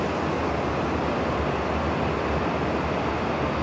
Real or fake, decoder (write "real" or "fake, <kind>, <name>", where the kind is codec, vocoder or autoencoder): real